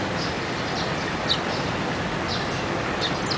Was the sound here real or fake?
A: real